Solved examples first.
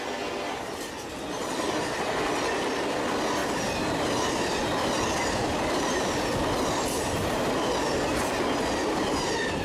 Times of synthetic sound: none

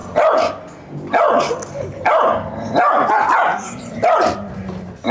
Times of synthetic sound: 3.5-4.5 (vocoder, BigVGAN v2)

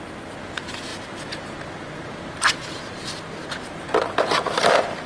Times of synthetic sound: 0.9-3.0 (vocoder, BigVGAN v2); 3.4-4.1

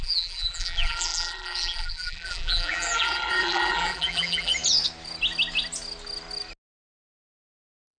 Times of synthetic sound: 0.0-4.5 (vocoder, BigVGAN v2); 6.8-8.0

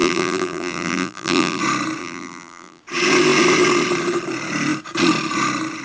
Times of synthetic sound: 0.0-1.6 (vocoder, BigVGAN v2); 2.0-2.8